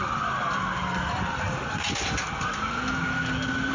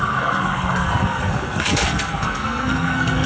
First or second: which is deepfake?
second